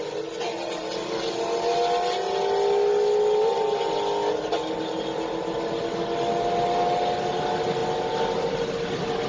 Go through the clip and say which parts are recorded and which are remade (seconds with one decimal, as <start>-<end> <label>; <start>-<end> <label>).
0.0-9.3 recorded